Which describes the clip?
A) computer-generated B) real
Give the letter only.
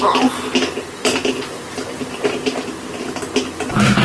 B